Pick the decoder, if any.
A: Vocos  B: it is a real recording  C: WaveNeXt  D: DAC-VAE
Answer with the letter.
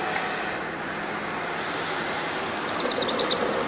B